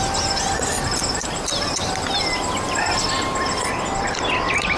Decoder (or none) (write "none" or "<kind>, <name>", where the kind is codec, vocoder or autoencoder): none